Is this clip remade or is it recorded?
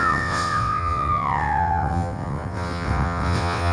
remade